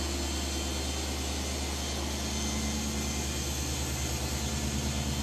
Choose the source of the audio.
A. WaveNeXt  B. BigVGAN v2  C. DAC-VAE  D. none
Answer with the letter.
D